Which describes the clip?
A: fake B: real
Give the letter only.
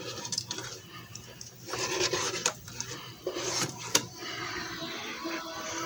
A